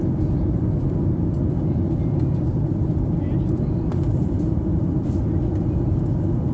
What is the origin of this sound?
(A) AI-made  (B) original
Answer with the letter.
A